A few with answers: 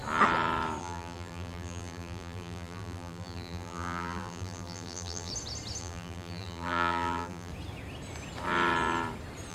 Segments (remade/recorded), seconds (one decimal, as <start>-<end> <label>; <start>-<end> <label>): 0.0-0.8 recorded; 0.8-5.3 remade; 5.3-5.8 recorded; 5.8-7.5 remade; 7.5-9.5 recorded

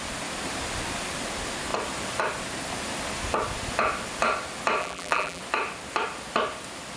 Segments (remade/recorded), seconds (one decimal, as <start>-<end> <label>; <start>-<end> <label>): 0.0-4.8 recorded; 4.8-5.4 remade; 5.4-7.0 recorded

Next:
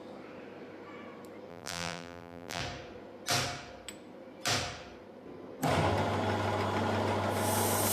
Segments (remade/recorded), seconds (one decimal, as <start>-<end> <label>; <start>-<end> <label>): 0.0-1.5 recorded; 1.5-2.6 remade; 2.6-7.9 recorded